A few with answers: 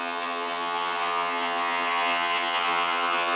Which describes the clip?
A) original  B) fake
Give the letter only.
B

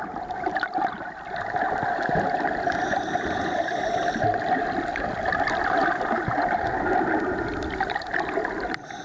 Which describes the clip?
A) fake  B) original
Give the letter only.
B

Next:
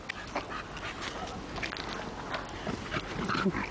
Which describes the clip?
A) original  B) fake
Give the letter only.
A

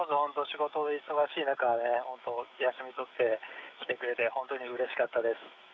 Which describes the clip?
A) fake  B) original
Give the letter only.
A